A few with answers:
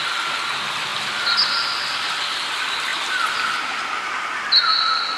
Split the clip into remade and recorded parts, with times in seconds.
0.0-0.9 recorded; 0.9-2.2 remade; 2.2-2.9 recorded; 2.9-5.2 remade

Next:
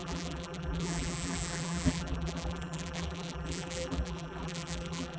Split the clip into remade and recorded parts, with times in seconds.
0.0-5.2 remade

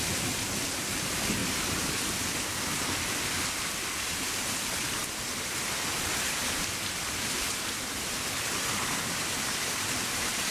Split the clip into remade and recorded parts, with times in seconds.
0.0-10.5 remade

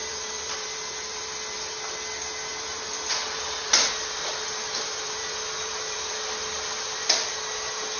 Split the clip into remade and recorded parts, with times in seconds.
0.0-1.9 remade; 1.9-2.5 recorded; 2.5-7.3 remade; 7.3-8.0 recorded